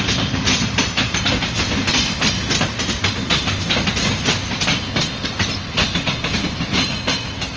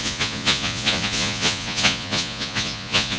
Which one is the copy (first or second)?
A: second